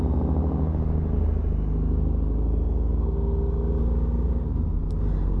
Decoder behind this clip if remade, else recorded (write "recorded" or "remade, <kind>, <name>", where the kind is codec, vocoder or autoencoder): recorded